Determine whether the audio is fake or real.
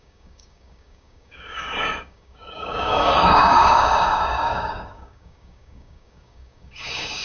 fake